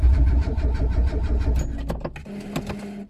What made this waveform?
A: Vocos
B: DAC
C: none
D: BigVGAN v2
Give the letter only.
C